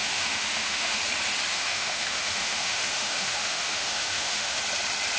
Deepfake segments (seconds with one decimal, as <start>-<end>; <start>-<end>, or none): 0.0-1.0; 1.5-4.6